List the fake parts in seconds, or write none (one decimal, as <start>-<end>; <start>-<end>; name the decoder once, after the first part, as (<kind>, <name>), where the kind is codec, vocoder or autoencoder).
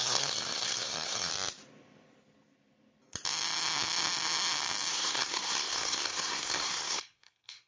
0.0-1.3 (codec, SNAC); 4.9-7.7